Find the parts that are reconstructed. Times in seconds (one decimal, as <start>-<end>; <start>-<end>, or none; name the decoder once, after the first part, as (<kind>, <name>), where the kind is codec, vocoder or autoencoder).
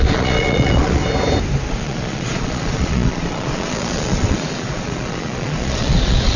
0.0-1.0 (vocoder, Vocos); 1.7-6.4